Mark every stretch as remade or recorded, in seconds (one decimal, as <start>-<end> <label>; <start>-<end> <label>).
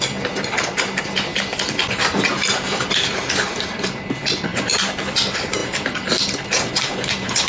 0.0-4.5 remade; 4.5-5.1 recorded; 5.1-7.5 remade